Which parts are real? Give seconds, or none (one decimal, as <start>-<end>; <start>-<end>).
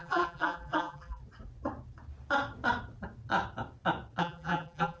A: 1.2-4.2